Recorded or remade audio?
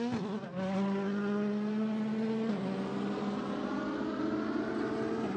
recorded